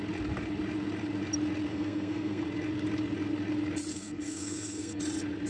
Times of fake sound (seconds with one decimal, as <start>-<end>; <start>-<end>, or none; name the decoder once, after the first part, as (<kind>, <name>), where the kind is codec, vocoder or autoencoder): 1.7-2.4 (codec, SNAC); 3.9-5.0